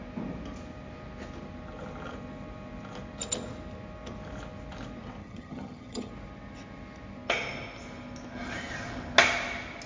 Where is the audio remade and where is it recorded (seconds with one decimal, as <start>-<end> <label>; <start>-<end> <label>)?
0.0-5.2 recorded; 5.2-6.1 remade; 6.1-9.9 recorded